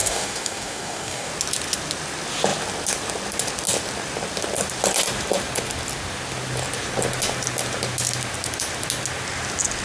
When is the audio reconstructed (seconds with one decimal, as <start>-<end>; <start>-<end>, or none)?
0.0-1.3